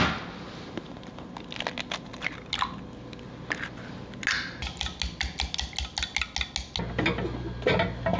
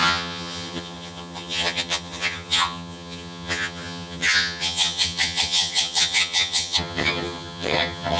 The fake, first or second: second